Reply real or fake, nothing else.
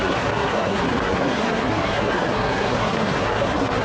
fake